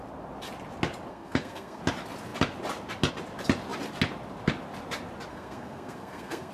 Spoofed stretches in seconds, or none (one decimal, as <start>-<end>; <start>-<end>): 1.1-1.8; 5.3-6.5